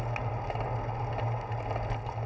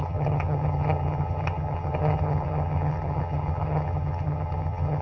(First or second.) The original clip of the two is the first